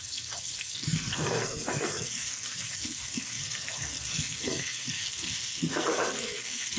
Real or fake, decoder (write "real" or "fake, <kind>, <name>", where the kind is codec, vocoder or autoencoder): fake, codec, SNAC